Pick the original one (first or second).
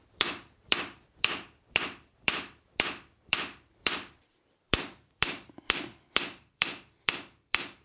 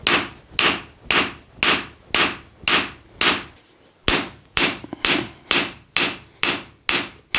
second